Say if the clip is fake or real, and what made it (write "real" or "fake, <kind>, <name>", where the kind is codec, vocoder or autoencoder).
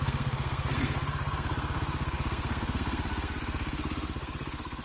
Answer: fake, codec, SNAC